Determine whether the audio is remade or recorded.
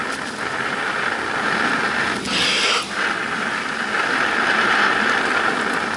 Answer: recorded